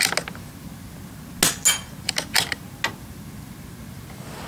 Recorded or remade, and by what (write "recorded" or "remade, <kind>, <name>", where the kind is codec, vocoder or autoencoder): recorded